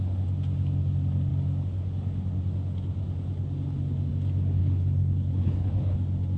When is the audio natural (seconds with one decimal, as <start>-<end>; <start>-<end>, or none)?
0.0-4.6; 5.9-6.4